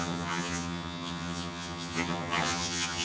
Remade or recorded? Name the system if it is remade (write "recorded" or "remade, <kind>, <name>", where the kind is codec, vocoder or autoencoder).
remade, vocoder, HiFi-GAN